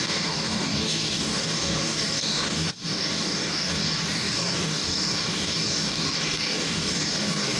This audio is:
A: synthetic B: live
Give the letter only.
A